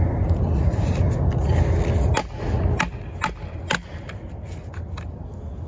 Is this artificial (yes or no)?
no